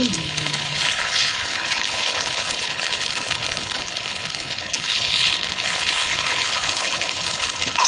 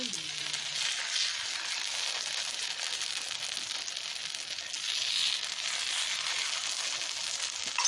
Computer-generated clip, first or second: first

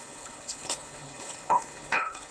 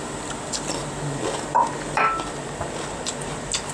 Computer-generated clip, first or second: first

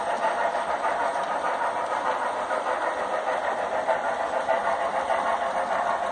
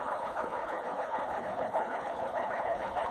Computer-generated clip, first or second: second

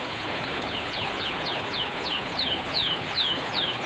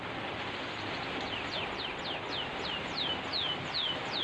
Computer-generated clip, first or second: first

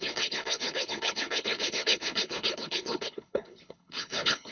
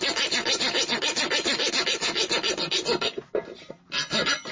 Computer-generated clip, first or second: first